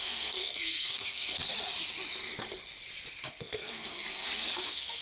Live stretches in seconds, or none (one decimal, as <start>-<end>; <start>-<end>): 1.4-3.3

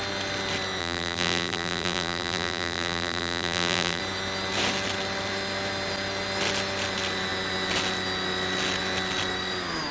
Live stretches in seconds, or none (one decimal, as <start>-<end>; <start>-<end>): 0.0-0.8; 4.0-9.9